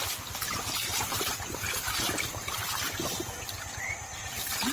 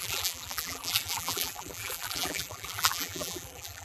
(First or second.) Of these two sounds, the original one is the first